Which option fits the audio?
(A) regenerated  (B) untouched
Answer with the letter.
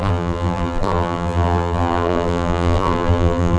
A